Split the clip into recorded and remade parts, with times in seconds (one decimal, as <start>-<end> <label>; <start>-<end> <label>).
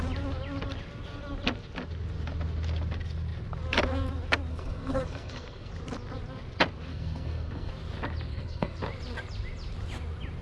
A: 0.0-4.5 recorded; 4.5-5.7 remade; 5.7-6.9 recorded; 6.9-7.7 remade; 7.7-8.3 recorded; 8.3-8.8 remade; 8.8-10.4 recorded